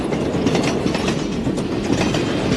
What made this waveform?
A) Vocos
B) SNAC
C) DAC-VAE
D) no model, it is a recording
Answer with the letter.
D